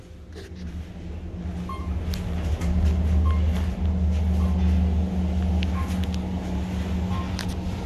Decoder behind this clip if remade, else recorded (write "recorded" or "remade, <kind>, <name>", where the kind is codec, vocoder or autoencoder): recorded